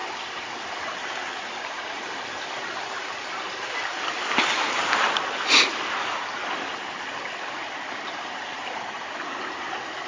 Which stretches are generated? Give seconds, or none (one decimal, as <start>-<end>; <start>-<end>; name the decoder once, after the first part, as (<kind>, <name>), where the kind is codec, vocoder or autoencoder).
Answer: none